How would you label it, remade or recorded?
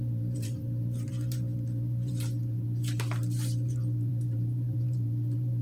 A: remade